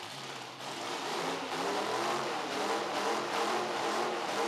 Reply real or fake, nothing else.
fake